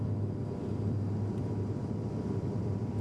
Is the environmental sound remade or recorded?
remade